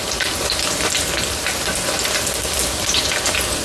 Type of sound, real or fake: real